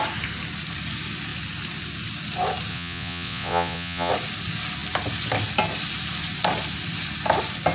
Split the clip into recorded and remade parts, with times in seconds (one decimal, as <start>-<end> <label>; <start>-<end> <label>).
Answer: 0.0-2.7 recorded; 2.7-4.1 remade; 4.1-7.7 recorded